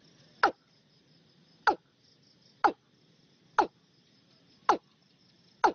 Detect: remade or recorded recorded